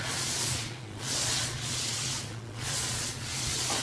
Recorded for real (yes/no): no